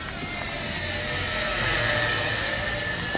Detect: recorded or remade recorded